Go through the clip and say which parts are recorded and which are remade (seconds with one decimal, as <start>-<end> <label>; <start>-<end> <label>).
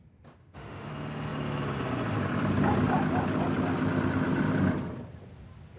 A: 0.0-0.4 recorded; 0.4-0.9 remade; 0.9-5.8 recorded